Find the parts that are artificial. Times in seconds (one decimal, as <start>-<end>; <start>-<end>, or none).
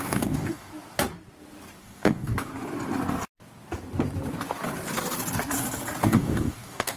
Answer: 0.0-0.7; 1.8-2.5; 6.0-7.0